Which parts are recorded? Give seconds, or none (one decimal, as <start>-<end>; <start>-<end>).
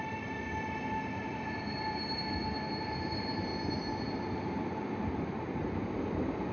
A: 3.5-4.3